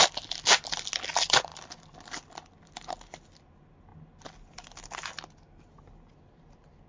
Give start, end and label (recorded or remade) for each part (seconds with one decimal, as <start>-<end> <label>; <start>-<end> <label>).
0.0-6.9 recorded